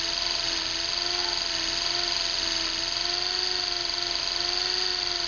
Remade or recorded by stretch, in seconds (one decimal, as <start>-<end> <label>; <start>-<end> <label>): 0.0-5.3 recorded